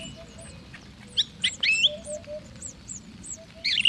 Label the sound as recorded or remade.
recorded